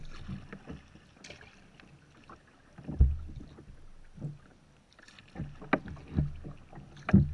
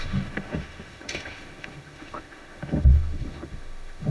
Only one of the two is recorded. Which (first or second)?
first